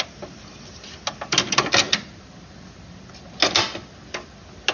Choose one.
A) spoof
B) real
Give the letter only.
B